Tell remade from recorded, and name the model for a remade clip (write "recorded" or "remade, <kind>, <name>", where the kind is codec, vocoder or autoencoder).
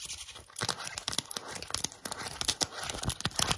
recorded